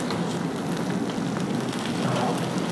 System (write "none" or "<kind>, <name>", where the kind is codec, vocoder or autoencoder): none